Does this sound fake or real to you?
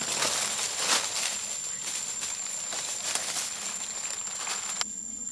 real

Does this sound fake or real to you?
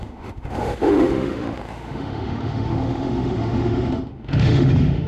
fake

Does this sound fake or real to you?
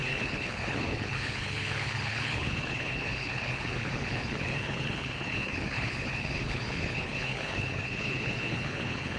fake